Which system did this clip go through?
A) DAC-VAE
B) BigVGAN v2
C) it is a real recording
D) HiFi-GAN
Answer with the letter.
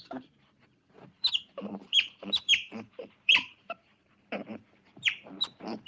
B